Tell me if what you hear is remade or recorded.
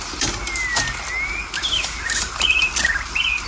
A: recorded